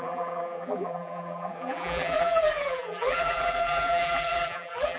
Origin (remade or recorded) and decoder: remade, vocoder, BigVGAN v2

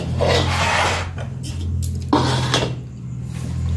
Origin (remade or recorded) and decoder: recorded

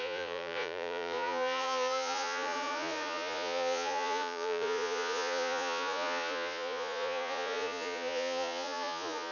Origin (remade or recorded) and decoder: remade, vocoder, Vocos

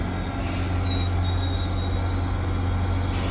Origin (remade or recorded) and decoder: recorded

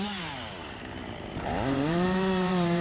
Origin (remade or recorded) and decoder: remade, vocoder, BigVGAN v2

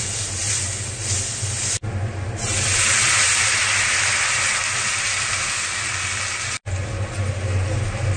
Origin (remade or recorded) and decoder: recorded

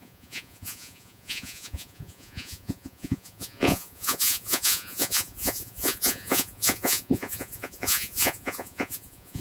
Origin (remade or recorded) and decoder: remade, vocoder, Vocos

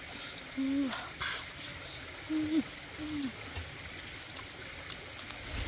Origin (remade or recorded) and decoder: recorded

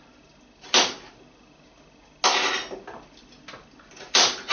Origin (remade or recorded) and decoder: recorded